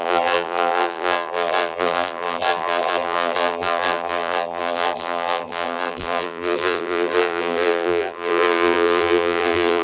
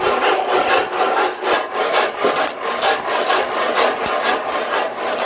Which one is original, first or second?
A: second